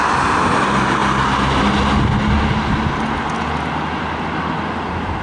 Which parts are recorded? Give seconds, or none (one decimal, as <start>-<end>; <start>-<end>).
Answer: 0.0-5.2